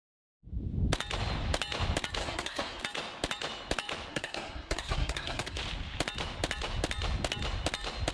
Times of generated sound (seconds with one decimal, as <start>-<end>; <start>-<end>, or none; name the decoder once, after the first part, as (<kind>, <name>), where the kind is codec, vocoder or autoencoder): 2.2-2.8 (codec, SNAC); 4.1-5.6

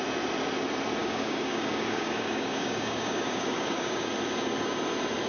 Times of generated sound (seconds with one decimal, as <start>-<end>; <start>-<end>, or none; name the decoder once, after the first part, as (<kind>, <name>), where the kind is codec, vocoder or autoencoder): 1.0-4.1 (codec, DAC)

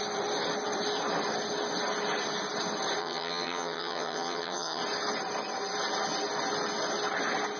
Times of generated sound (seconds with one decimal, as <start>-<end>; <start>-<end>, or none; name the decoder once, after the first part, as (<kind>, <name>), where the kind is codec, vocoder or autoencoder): 3.0-4.8 (vocoder, HiFi-GAN)

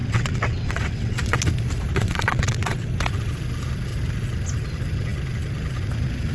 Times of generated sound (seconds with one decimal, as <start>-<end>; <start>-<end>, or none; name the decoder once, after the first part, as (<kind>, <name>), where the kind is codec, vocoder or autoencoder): 0.0-1.4 (vocoder, WaveNeXt); 1.9-2.9

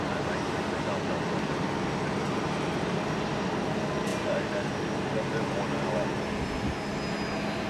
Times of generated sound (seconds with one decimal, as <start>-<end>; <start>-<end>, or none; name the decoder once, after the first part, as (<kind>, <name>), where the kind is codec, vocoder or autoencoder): none

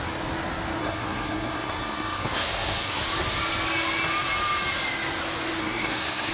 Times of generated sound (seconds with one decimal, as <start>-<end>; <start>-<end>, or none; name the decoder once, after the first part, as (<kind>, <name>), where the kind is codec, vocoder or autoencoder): 0.8-3.0 (codec, SNAC); 5.6-6.3

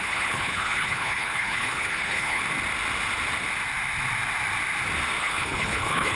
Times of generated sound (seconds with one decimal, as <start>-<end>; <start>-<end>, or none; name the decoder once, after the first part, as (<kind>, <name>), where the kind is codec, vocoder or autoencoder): 0.0-2.4 (codec, HILCodec); 5.2-6.2